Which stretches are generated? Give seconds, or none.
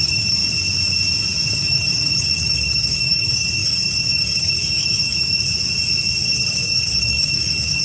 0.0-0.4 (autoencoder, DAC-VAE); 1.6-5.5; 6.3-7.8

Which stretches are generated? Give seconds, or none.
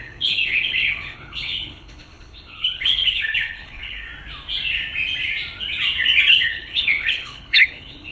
0.0-4.1 (codec, HILCodec); 6.3-8.1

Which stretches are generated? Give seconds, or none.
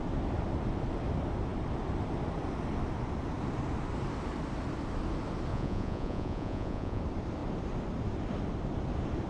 5.5-7.0 (vocoder, Vocos)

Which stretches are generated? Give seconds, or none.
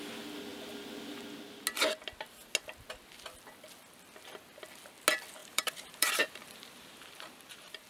5.4-7.9 (vocoder, BigVGAN v2)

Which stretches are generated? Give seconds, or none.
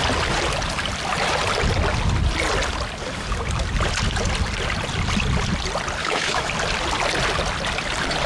6.0-6.5 (autoencoder, DAC-VAE)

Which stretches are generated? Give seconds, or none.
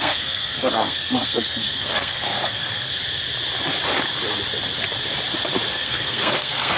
0.0-2.9 (codec, SNAC); 5.7-6.8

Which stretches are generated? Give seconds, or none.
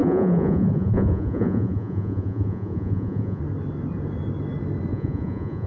0.0-3.4 (vocoder, Vocos); 4.9-5.7